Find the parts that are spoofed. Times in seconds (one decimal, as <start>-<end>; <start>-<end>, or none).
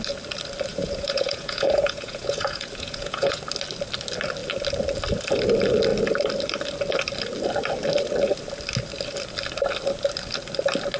0.7-3.4